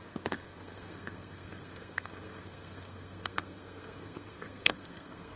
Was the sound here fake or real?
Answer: fake